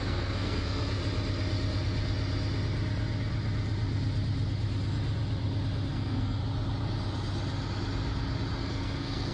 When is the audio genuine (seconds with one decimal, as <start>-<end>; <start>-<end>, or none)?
1.0-5.9; 6.4-8.6